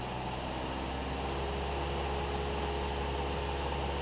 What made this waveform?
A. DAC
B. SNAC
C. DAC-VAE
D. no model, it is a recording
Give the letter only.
D